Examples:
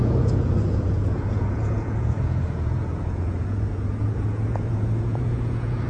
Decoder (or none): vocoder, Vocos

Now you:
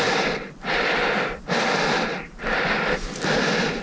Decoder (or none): vocoder, BigVGAN v2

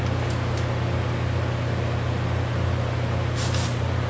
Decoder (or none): none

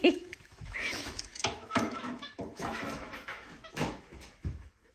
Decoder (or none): autoencoder, DAC-VAE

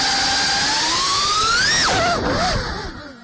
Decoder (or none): none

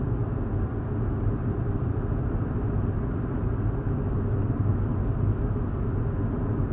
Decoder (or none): none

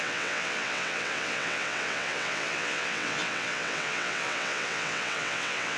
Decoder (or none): vocoder, WaveNeXt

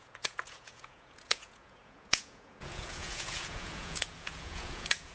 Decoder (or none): vocoder, Vocos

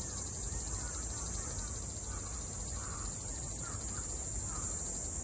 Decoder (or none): none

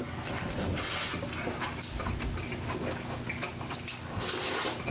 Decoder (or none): none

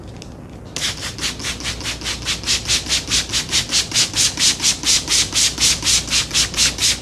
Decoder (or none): none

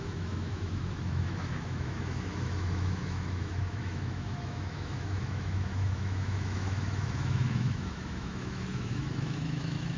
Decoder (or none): autoencoder, DAC-VAE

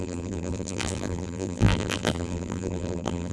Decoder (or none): vocoder, BigVGAN v2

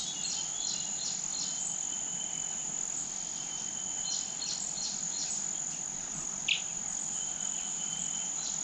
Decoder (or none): none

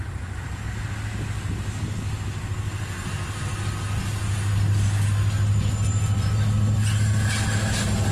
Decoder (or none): none